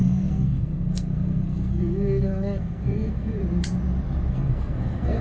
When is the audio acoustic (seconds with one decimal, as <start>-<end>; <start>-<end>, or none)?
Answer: 3.4-4.3

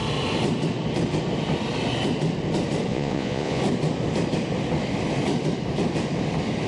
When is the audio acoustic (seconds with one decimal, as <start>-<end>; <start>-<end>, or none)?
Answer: 0.0-2.9; 3.6-6.7

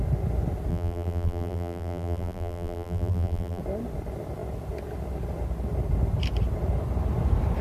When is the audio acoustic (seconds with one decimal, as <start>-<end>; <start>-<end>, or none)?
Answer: 0.0-0.7; 3.6-7.6